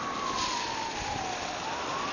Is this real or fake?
real